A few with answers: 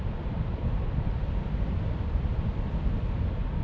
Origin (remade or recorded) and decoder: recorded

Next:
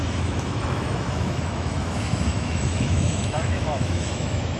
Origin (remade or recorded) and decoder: remade, autoencoder, DAC-VAE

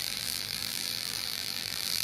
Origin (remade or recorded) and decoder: remade, vocoder, BigVGAN v2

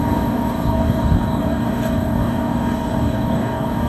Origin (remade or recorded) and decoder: remade, codec, DAC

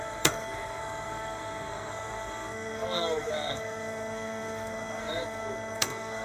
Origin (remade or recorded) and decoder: remade, codec, SNAC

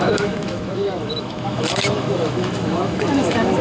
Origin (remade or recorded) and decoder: remade, autoencoder, DAC-VAE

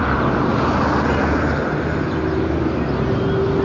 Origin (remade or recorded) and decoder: recorded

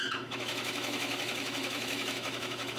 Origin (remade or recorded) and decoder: remade, autoencoder, DAC-VAE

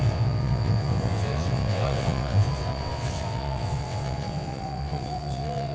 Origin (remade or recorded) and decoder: remade, vocoder, WaveNeXt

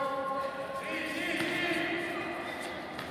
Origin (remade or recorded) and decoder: recorded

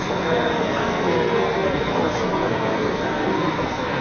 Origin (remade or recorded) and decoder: remade, codec, SNAC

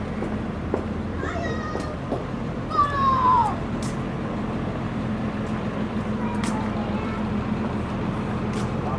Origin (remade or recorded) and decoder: remade, vocoder, BigVGAN v2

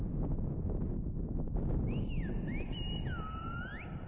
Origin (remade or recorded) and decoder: recorded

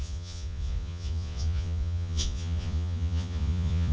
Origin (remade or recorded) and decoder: remade, vocoder, Vocos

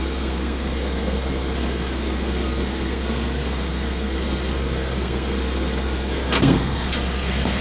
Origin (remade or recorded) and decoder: remade, codec, SNAC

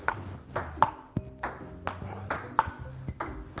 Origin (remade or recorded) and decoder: recorded